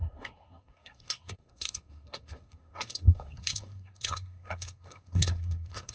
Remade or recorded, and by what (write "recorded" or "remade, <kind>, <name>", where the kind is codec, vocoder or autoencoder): remade, codec, SNAC